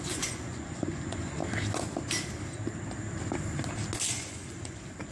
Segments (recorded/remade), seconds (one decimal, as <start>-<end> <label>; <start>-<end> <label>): 0.0-1.4 remade; 1.4-4.1 recorded; 4.1-5.1 remade